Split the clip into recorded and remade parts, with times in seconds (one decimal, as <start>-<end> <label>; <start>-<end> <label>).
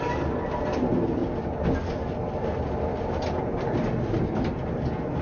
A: 0.0-5.2 recorded